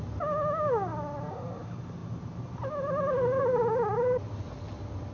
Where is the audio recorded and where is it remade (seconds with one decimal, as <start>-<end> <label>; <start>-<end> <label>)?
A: 0.0-5.1 recorded